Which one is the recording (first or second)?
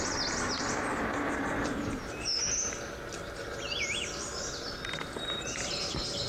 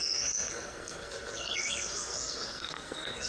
first